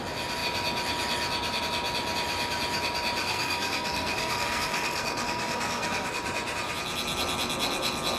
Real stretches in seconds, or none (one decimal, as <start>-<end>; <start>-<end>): 0.0-3.2; 6.2-8.2